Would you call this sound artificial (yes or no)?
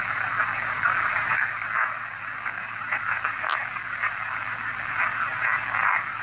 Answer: no